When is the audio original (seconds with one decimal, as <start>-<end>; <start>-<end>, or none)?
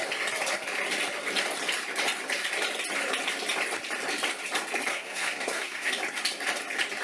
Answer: 0.0-4.9; 5.9-7.0